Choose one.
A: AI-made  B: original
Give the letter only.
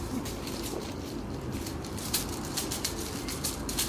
A